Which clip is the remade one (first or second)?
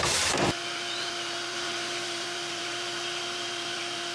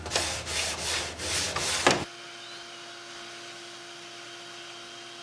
first